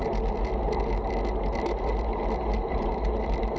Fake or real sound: real